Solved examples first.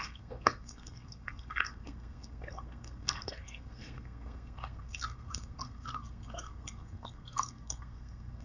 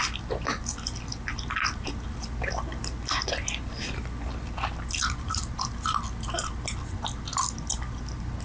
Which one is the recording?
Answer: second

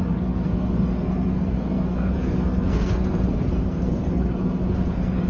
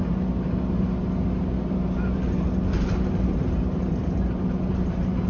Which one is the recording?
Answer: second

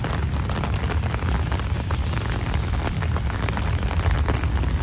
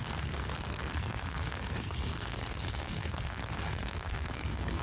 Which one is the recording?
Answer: first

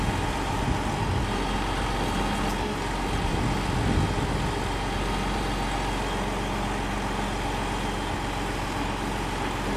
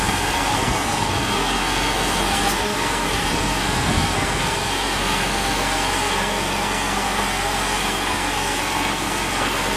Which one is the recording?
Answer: first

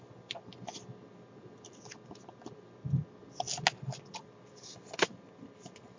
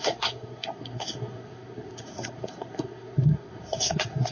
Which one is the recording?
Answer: first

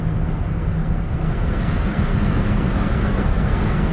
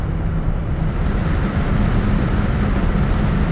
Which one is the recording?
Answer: second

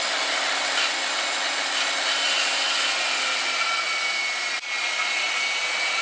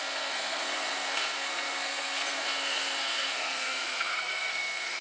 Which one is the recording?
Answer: first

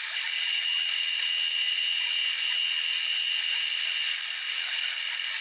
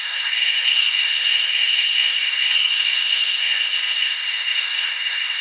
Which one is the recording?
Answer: first